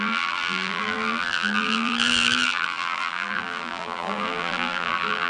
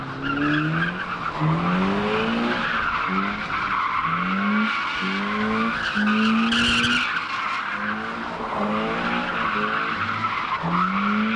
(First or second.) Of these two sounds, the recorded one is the second